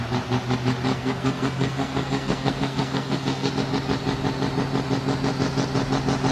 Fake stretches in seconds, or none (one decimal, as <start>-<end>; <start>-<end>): 0.9-3.5